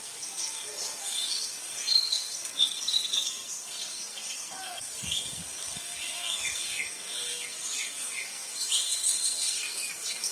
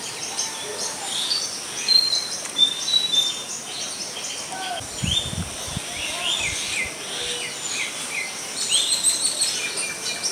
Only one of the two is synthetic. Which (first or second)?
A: first